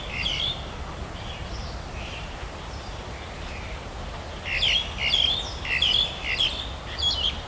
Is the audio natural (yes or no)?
yes